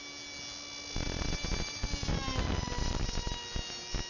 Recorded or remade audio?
recorded